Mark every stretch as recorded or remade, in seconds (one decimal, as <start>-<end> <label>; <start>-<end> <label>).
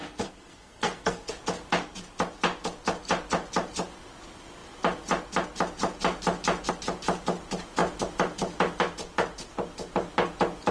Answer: 0.0-1.3 remade; 1.3-10.7 recorded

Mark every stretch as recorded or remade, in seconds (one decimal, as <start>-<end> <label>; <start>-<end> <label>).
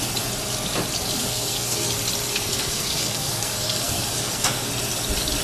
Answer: 0.0-1.2 recorded; 1.2-1.9 remade; 1.9-2.3 recorded; 2.3-4.7 remade; 4.7-5.4 recorded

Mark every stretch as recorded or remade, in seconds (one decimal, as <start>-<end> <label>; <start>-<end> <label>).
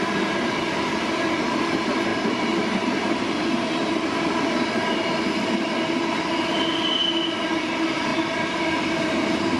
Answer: 0.0-9.6 recorded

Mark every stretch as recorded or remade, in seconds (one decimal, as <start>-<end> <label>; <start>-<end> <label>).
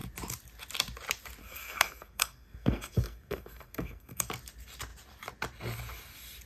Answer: 0.0-1.4 recorded; 1.4-4.3 remade; 4.3-6.5 recorded